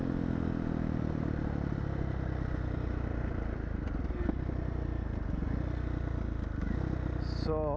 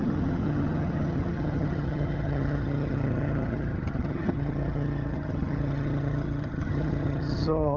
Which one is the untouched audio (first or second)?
first